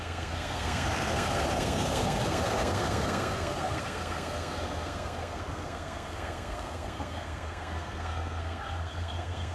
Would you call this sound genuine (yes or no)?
no